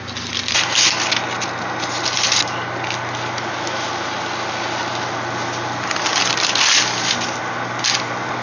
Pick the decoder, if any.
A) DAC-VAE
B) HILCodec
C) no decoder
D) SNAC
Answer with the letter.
C